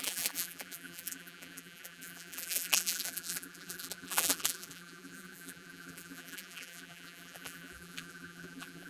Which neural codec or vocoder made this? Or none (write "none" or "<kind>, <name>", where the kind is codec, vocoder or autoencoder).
vocoder, BigVGAN v2